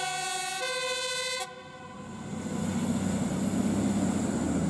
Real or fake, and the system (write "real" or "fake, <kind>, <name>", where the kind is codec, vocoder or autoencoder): real